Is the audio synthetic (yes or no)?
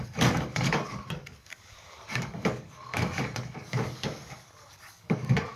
yes